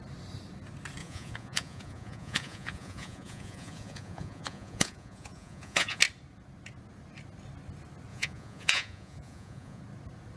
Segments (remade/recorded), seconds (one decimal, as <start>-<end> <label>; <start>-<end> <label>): 0.0-1.0 recorded; 1.0-6.0 remade; 6.0-8.1 recorded; 8.1-9.8 remade; 9.8-10.4 recorded